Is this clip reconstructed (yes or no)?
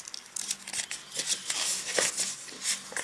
no